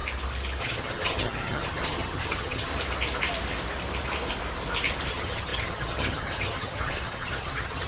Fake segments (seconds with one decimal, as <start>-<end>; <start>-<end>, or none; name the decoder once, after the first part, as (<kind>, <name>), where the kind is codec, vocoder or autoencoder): 0.6-2.7 (vocoder, HiFi-GAN); 5.1-7.9